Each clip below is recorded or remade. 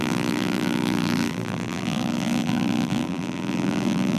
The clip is remade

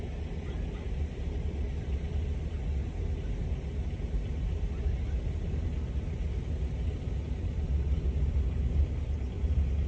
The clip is recorded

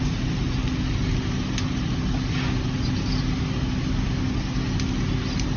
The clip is recorded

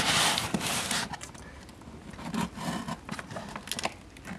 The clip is recorded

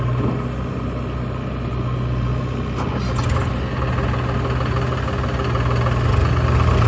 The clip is recorded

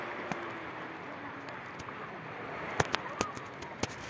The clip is recorded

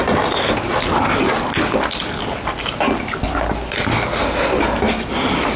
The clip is recorded